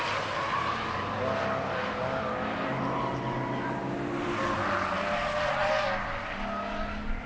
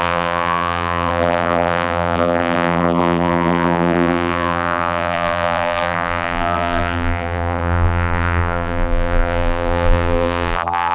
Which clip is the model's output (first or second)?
second